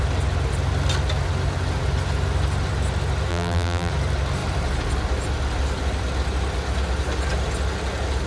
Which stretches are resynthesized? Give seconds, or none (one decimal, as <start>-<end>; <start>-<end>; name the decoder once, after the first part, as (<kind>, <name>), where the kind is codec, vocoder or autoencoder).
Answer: 3.3-3.9 (vocoder, BigVGAN v2)